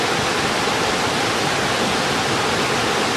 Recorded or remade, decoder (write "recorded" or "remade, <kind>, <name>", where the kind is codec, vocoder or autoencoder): recorded